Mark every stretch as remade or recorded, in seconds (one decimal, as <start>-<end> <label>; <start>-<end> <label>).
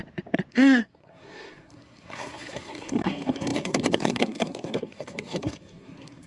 0.0-0.5 recorded; 0.5-6.3 remade